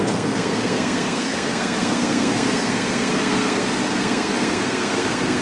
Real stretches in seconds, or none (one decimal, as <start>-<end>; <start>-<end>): none